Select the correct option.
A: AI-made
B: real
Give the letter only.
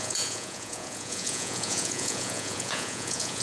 A